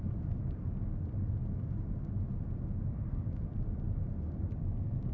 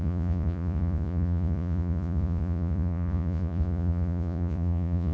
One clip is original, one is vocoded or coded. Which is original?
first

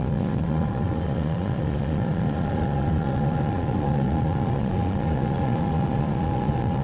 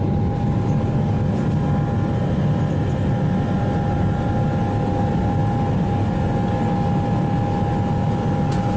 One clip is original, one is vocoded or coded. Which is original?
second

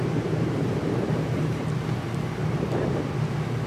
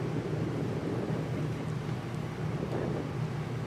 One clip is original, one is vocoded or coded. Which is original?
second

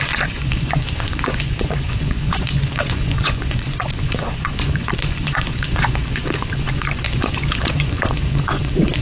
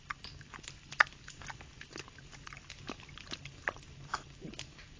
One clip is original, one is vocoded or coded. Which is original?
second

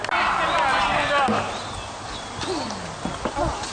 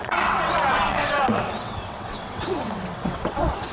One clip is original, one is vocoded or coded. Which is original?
first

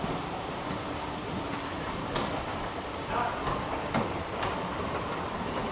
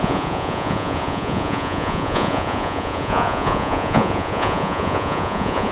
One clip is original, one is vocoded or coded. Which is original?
first